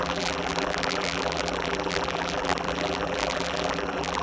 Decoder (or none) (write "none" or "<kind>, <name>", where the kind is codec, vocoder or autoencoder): vocoder, BigVGAN v2